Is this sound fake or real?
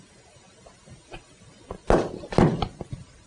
real